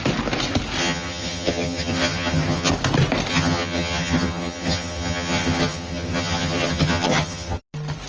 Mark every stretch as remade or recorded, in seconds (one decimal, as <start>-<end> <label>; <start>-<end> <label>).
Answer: 0.0-0.8 recorded; 0.8-2.7 remade; 2.7-3.3 recorded; 3.3-7.6 remade; 7.6-8.1 recorded